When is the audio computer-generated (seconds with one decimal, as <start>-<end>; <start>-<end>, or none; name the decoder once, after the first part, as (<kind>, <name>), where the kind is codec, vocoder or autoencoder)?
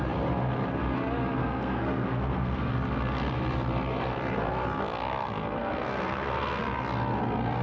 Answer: 1.4-2.7 (codec, SNAC); 5.6-6.6